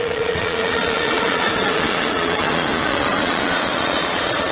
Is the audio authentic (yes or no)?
no